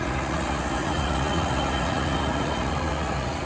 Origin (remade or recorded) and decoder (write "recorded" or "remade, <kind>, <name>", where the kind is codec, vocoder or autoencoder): remade, vocoder, Vocos